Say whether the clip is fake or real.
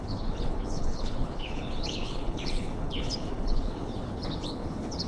fake